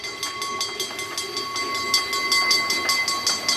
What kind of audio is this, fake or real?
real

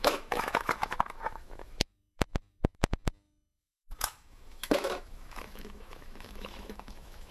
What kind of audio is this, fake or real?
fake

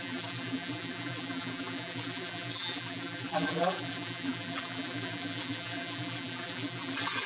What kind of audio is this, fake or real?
fake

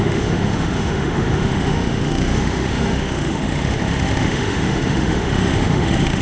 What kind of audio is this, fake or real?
fake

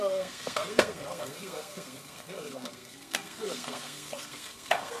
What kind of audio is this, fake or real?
fake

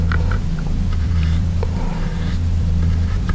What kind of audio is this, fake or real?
fake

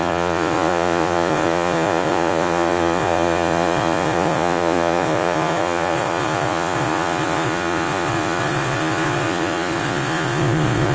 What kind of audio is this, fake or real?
fake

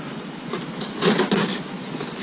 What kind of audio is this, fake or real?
real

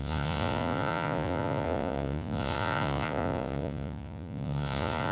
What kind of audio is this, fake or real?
fake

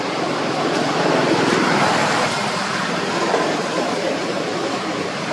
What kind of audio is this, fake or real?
fake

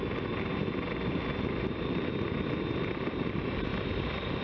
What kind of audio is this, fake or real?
real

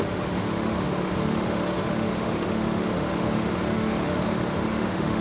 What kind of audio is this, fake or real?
fake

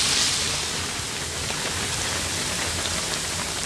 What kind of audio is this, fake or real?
real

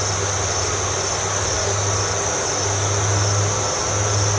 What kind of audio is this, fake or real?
real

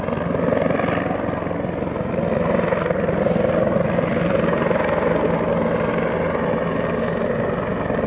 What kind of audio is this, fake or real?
real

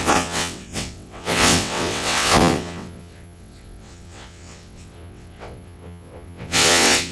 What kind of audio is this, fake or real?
fake